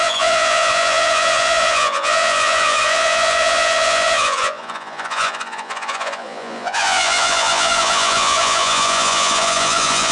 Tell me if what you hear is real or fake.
fake